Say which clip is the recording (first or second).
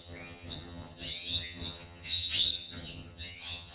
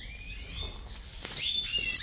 second